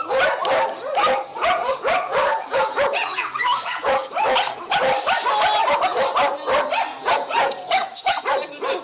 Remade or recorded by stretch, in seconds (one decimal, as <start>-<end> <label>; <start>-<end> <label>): 0.0-1.3 recorded; 1.3-4.1 remade; 4.1-6.9 recorded; 6.9-8.2 remade; 8.2-8.8 recorded